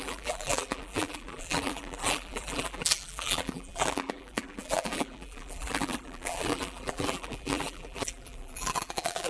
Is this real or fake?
fake